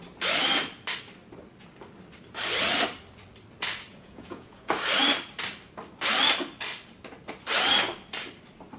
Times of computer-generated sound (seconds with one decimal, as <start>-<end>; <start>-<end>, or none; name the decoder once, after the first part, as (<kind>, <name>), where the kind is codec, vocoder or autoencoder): 3.9-4.7 (vocoder, Vocos)